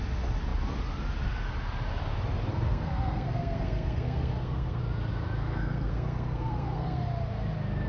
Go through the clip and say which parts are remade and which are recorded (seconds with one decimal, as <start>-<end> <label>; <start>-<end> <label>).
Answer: 0.0-2.5 recorded; 2.5-4.8 remade; 4.8-5.4 recorded; 5.4-7.0 remade; 7.0-7.9 recorded